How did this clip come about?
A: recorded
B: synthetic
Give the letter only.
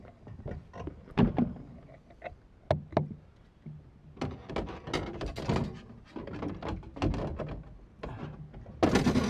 A